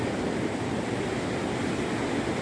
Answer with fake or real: real